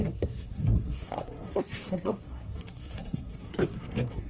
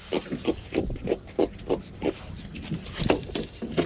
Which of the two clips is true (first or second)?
second